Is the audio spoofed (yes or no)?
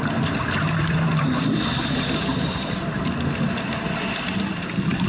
no